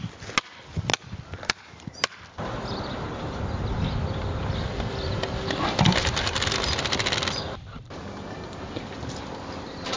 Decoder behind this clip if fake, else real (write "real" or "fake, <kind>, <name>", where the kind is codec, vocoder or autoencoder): real